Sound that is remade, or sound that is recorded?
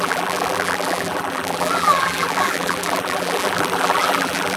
remade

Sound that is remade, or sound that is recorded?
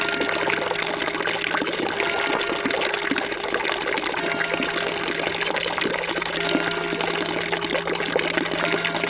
recorded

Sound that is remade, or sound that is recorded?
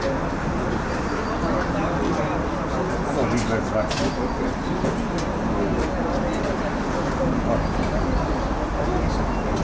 recorded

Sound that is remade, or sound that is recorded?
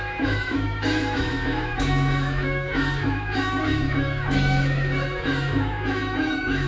remade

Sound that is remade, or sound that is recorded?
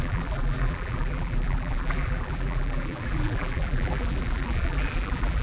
remade